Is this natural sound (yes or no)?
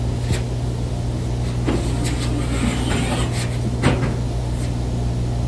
yes